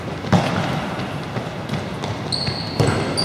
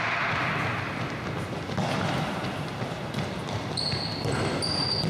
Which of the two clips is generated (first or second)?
second